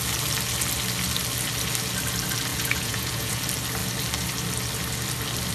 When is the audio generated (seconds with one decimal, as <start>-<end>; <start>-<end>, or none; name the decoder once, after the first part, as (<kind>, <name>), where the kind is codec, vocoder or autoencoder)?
2.5-3.4 (vocoder, Vocos)